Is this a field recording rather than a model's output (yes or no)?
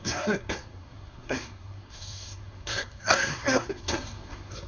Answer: no